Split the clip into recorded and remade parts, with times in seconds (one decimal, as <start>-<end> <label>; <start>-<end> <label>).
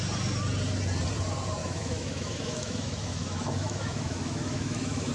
0.0-1.6 recorded; 1.6-5.1 remade